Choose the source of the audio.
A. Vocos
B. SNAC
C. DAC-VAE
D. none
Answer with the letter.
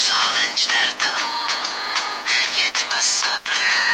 A